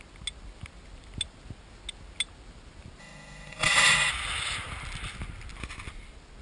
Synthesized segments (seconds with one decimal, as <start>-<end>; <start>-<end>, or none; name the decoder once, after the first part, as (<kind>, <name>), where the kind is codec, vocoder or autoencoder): 3.0-4.1 (autoencoder, DAC-VAE)